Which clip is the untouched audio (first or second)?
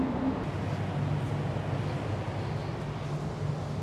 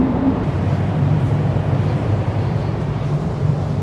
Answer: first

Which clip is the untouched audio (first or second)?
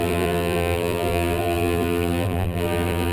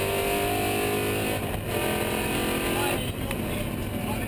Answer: second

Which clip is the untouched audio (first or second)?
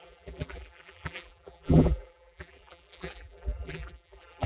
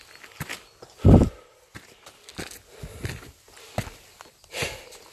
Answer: second